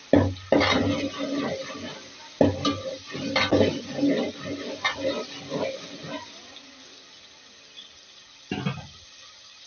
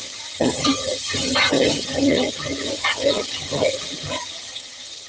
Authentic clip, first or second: first